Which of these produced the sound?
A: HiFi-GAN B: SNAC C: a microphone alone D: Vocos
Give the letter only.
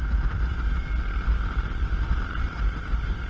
C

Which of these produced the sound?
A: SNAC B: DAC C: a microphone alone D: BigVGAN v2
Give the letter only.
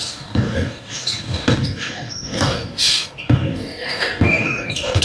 B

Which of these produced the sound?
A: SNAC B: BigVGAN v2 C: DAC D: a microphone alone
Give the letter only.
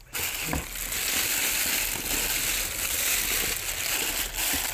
D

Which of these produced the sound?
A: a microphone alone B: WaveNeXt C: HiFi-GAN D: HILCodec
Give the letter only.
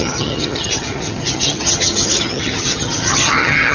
C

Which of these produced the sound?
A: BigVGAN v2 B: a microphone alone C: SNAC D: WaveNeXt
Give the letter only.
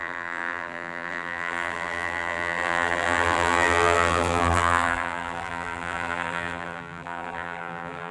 A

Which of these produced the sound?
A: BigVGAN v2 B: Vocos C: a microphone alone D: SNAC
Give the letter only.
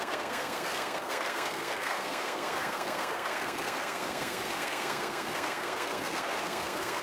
D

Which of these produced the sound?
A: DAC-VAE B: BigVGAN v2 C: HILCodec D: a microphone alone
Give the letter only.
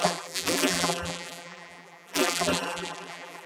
B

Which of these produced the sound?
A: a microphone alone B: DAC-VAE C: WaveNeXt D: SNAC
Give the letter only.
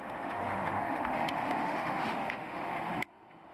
B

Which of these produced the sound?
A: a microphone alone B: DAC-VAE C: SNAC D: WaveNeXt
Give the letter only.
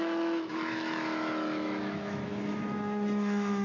B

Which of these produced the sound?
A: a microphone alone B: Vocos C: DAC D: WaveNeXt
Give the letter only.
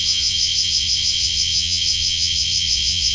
D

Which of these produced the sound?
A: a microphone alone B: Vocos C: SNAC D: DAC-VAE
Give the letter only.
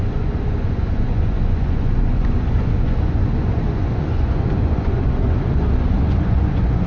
B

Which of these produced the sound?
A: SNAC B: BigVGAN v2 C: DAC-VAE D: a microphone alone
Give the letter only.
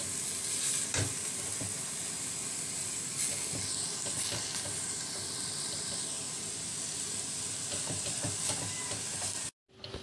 D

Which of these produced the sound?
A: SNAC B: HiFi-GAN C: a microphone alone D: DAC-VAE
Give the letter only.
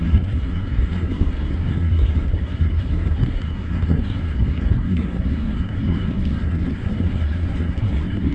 A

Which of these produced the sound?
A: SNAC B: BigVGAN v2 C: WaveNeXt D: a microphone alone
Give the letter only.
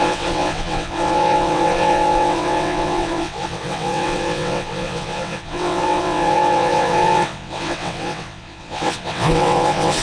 C